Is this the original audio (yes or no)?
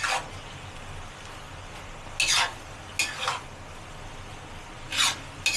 yes